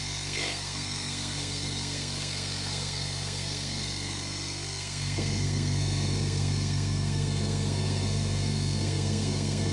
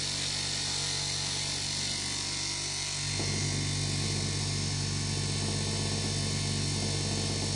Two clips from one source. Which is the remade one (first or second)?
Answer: first